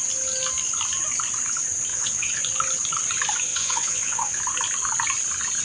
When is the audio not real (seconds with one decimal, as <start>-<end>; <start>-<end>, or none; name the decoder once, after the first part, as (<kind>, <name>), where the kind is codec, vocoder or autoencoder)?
1.9-2.4 (vocoder, WaveNeXt); 3.5-4.4